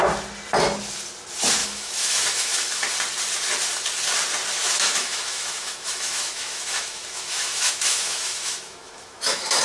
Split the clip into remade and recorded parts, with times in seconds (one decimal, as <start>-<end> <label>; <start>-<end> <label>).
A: 0.0-1.6 recorded; 1.6-2.7 remade; 2.7-4.6 recorded; 4.6-9.6 remade